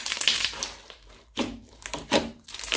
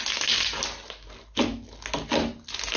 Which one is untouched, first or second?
second